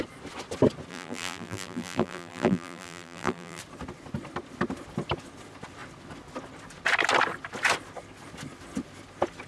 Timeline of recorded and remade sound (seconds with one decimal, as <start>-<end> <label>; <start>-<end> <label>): 0.0-0.9 recorded; 0.9-3.6 remade; 3.6-9.5 recorded